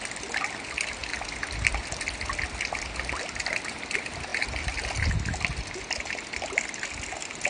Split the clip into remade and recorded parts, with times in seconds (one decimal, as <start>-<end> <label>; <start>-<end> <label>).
0.0-7.5 recorded